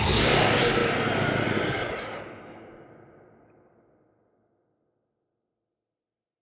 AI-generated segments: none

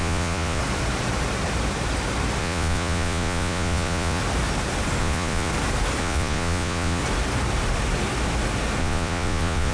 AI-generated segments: 0.0-0.6 (vocoder, Vocos); 2.4-4.2; 5.0-5.5; 6.0-7.0; 8.8-9.7

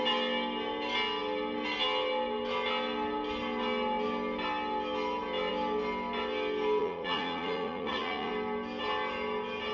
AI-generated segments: 6.8-8.3 (vocoder, Vocos)

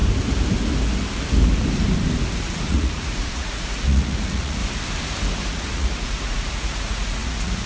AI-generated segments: 2.7-4.6 (vocoder, Vocos); 5.5-7.7

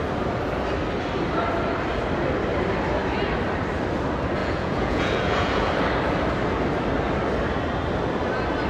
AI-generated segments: 4.4-5.7 (vocoder, Vocos)